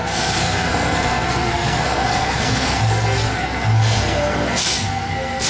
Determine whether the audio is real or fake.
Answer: fake